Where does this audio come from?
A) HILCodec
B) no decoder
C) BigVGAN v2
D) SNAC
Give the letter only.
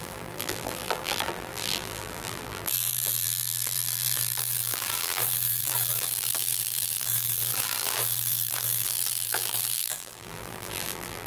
C